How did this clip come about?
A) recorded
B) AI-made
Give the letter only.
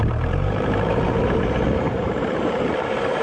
B